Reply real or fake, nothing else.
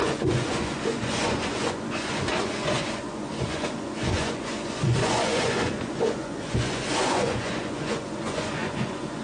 fake